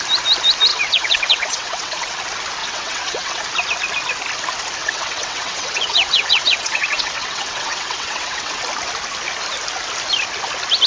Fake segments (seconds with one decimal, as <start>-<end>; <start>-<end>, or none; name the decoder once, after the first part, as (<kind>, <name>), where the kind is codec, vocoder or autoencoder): 0.7-2.2 (vocoder, WaveNeXt); 2.6-3.4; 4.8-8.6